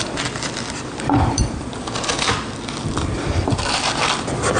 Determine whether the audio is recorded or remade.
remade